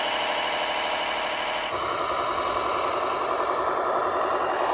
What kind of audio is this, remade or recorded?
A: recorded